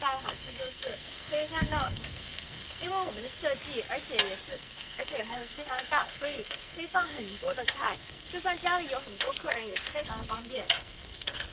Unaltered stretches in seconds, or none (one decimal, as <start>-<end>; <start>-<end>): 3.4-4.5; 8.3-9.0